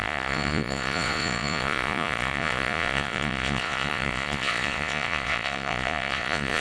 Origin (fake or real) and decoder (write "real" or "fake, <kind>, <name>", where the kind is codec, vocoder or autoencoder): fake, vocoder, Vocos